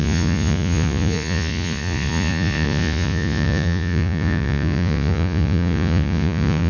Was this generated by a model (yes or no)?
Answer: yes